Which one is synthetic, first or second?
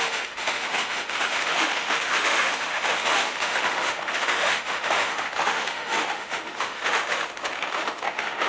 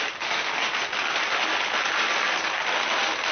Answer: first